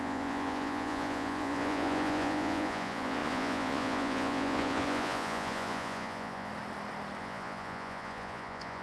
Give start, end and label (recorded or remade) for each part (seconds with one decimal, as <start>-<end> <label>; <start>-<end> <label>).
0.0-6.5 remade; 6.5-7.2 recorded; 7.2-8.8 remade